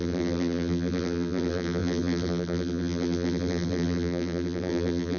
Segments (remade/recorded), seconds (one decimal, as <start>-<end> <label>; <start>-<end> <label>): 0.0-5.2 remade